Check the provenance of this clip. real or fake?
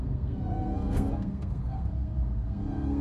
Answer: fake